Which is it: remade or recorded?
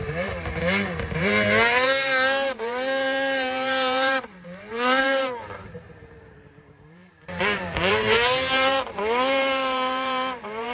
remade